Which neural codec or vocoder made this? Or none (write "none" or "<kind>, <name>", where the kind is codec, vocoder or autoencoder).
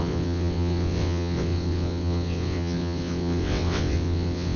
vocoder, WaveNeXt